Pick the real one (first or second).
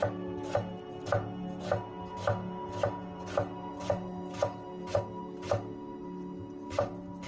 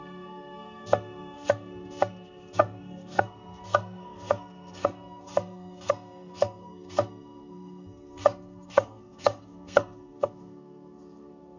first